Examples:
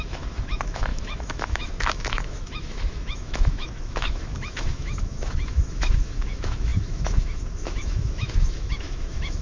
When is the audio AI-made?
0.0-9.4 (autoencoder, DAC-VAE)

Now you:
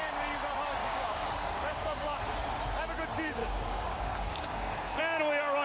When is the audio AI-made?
0.8-2.2 (codec, DAC); 3.4-5.0